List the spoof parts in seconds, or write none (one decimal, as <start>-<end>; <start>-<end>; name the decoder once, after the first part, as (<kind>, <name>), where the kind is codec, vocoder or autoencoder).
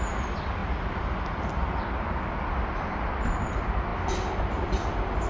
none